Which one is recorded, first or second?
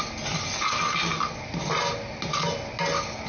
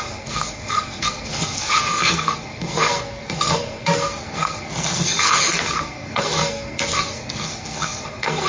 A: first